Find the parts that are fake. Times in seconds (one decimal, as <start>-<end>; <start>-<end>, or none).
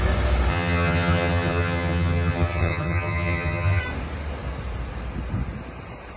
0.5-3.8